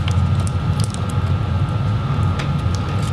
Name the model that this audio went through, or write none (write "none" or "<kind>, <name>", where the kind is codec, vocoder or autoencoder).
none